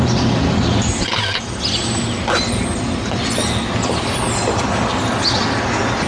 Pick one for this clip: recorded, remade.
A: recorded